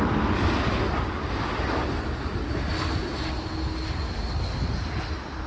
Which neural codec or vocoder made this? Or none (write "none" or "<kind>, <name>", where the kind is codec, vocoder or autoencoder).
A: none